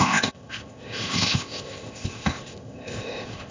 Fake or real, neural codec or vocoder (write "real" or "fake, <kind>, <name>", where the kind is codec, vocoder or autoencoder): fake, codec, ZipCodec